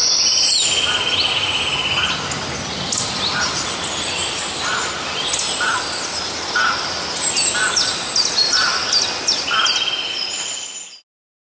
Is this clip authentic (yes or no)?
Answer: yes